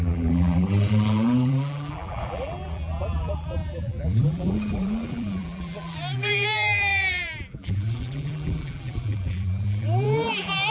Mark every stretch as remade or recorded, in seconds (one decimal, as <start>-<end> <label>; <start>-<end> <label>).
0.0-10.7 remade